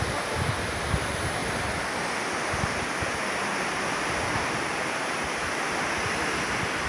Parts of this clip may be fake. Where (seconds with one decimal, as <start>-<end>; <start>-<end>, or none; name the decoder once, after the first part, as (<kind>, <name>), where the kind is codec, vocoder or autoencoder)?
none